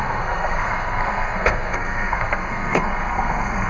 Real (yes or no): no